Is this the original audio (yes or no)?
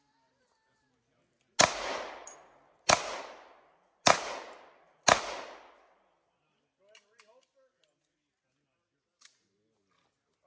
yes